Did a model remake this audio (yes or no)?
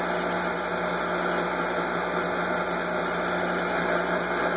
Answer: no